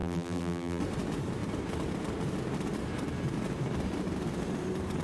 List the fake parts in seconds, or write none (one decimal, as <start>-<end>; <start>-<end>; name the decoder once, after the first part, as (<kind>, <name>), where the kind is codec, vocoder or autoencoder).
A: 0.0-0.8 (vocoder, BigVGAN v2)

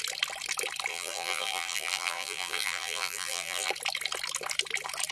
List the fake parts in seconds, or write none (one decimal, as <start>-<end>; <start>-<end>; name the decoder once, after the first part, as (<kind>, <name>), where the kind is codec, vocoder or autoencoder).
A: 0.9-3.7 (vocoder, BigVGAN v2)

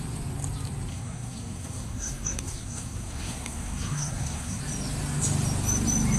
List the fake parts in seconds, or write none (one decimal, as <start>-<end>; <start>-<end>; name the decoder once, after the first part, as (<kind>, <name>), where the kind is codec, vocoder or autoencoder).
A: 0.9-4.6 (codec, SNAC)

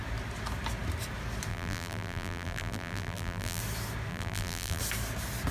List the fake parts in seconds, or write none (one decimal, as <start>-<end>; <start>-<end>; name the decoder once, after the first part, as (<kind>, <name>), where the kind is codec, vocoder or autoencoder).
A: 1.5-3.6 (vocoder, BigVGAN v2); 4.1-4.8